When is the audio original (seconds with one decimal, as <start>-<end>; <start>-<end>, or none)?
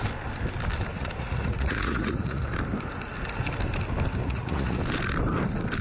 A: 0.0-0.9; 2.5-4.2; 4.8-5.8